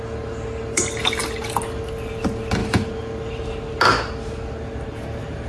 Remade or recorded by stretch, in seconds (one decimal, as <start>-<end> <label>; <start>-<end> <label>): 0.0-5.5 recorded